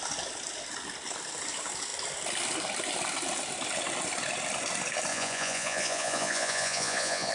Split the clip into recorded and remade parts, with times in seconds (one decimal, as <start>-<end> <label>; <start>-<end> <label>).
0.0-5.1 recorded; 5.1-7.3 remade